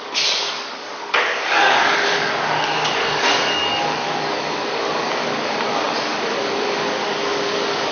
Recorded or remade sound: remade